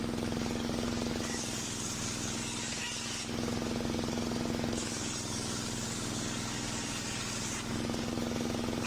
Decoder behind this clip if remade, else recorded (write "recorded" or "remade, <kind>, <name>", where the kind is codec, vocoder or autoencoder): remade, codec, DAC